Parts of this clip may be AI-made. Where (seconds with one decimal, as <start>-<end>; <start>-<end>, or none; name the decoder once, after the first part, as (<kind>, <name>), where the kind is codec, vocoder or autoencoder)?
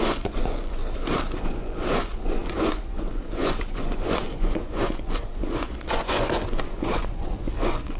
0.0-0.8 (vocoder, Vocos); 1.4-8.0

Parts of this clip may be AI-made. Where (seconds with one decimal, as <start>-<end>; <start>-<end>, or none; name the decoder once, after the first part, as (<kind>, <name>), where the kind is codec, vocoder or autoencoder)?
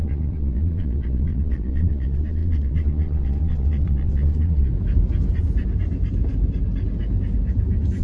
0.0-4.7 (vocoder, Vocos)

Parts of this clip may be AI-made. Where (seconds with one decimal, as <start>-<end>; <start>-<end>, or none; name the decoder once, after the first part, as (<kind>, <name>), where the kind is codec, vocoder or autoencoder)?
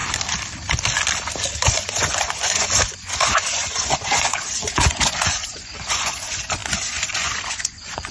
1.7-8.1 (vocoder, Vocos)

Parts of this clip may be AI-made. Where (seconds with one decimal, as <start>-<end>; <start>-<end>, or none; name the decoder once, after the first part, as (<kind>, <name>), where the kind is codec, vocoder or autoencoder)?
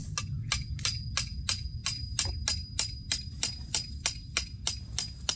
none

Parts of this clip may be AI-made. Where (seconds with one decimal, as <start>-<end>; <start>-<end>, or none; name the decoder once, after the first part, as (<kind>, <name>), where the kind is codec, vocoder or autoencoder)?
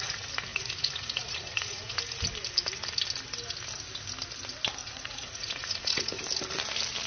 0.5-2.0 (vocoder, Vocos); 4.8-6.2